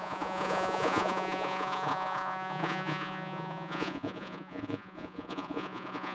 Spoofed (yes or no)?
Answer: yes